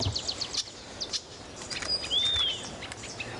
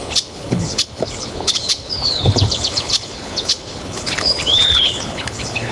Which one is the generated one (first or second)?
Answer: second